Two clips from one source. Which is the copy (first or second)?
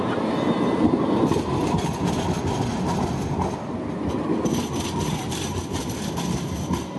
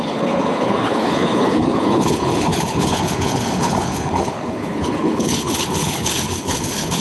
second